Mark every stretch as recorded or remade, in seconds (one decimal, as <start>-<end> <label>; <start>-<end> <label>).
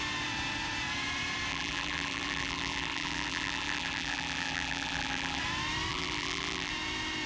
0.0-1.5 recorded; 1.5-5.4 remade; 5.4-5.9 recorded; 5.9-6.7 remade; 6.7-7.3 recorded